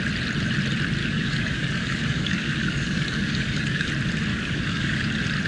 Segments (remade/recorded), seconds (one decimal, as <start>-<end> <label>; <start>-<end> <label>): 0.0-1.0 recorded; 1.0-3.9 remade; 3.9-4.3 recorded; 4.3-5.1 remade; 5.1-5.5 recorded